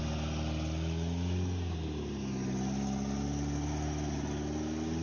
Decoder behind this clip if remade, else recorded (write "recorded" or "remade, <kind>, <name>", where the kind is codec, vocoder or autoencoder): recorded